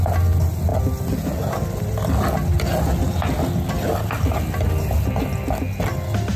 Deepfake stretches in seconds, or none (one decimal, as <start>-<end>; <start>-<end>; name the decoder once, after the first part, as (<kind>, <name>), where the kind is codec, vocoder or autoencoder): none